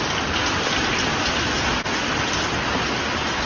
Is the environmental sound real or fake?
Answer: real